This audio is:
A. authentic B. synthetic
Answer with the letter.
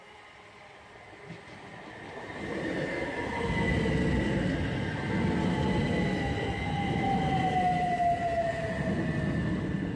A